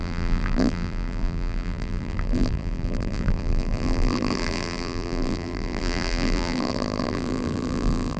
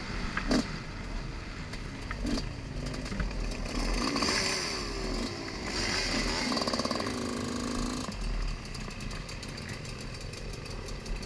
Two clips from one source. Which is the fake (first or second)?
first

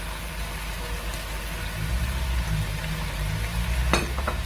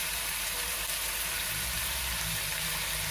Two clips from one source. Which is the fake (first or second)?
second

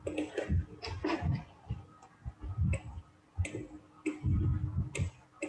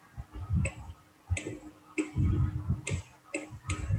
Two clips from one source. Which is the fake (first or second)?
second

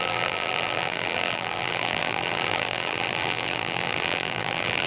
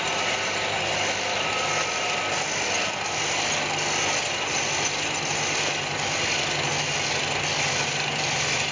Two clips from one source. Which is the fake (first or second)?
first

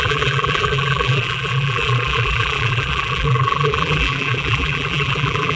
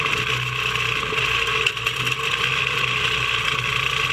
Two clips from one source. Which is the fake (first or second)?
first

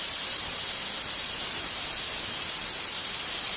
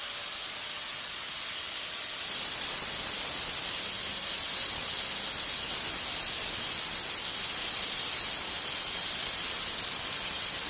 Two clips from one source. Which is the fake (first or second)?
first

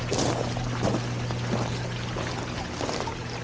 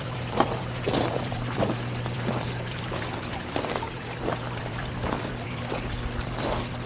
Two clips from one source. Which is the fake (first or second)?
second